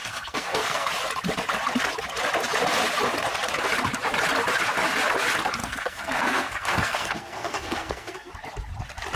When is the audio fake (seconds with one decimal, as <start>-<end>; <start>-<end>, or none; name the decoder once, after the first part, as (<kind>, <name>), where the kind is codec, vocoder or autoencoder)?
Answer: 0.0-0.9 (codec, SNAC); 5.6-8.3